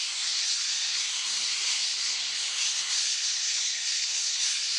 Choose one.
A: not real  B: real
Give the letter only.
A